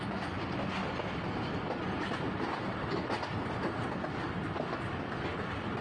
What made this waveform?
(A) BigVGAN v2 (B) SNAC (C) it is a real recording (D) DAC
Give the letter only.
C